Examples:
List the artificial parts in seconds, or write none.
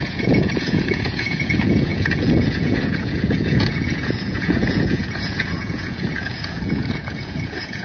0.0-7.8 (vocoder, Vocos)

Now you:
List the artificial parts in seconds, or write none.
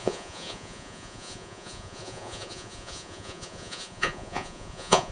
0.0-5.1 (vocoder, Vocos)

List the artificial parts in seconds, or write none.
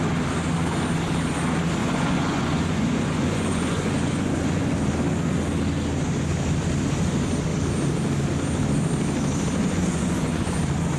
1.8-4.8 (vocoder, Vocos); 9.6-10.6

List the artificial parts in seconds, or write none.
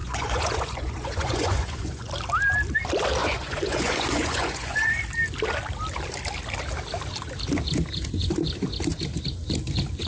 0.0-2.1 (vocoder, Vocos); 3.2-5.0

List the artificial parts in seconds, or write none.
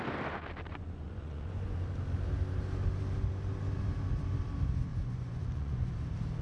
0.7-1.9 (vocoder, Vocos); 4.9-5.9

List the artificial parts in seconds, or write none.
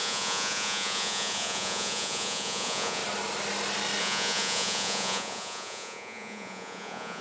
0.0-3.0 (vocoder, Vocos); 4.0-7.2